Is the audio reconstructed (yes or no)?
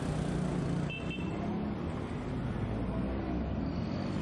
no